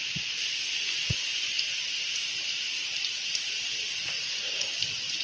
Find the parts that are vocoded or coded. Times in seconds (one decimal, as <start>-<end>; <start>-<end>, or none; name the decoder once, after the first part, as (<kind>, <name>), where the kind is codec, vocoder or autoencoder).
1.3-3.2 (vocoder, BigVGAN v2)

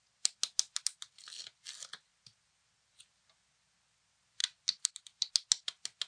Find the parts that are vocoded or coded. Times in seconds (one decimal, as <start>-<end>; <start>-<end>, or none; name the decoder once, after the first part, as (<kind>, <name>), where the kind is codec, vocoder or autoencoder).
none

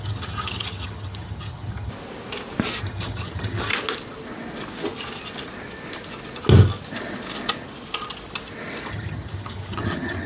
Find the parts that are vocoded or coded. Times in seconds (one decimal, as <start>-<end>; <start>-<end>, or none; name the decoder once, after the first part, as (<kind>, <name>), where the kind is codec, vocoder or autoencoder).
0.0-1.9 (vocoder, HiFi-GAN); 2.8-3.7; 8.9-10.3